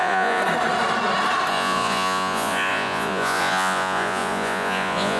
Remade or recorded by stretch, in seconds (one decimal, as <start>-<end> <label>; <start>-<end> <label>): 0.0-0.4 remade; 0.4-1.5 recorded; 1.5-5.2 remade